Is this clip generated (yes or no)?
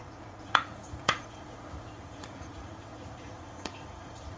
yes